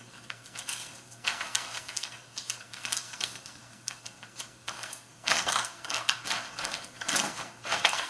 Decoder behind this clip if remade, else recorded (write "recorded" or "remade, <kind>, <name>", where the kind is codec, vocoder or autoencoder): remade, codec, SNAC